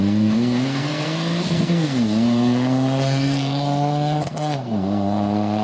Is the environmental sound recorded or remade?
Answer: remade